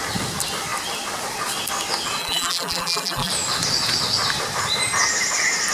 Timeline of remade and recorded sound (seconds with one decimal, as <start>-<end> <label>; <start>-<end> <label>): 0.0-2.2 recorded; 2.2-3.3 remade; 3.3-5.7 recorded

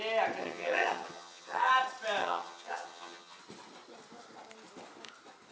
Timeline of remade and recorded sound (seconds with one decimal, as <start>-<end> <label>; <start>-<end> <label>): 0.0-0.4 recorded; 0.4-1.7 remade; 1.7-2.2 recorded; 2.2-3.4 remade; 3.4-5.5 recorded

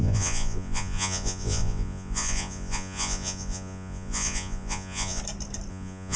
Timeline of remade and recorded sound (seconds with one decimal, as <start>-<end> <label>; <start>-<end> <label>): 0.0-5.2 remade; 5.2-5.7 recorded; 5.7-6.2 remade

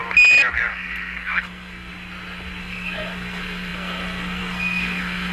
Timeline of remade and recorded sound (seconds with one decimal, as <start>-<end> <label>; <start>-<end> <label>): 0.0-0.7 recorded; 0.7-1.9 remade; 1.9-2.6 recorded; 2.6-5.3 remade

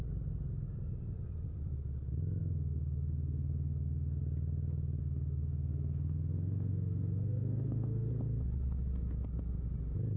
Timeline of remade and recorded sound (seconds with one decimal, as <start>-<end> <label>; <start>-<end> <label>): 0.0-2.4 recorded; 2.4-4.2 remade; 4.2-5.0 recorded; 5.0-8.1 remade; 8.1-10.2 recorded